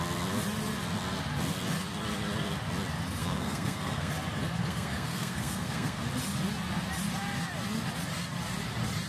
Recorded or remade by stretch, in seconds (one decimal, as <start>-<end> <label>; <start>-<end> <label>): 0.0-3.2 recorded; 3.2-4.1 remade; 4.1-4.6 recorded; 4.6-6.0 remade; 6.0-9.1 recorded